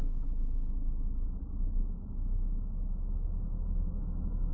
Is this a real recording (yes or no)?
no